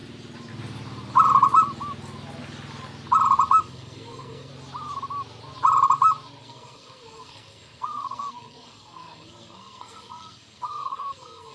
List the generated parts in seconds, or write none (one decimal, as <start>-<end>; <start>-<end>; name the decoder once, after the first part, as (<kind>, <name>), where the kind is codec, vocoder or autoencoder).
3.6-4.5 (codec, SNAC); 6.4-11.5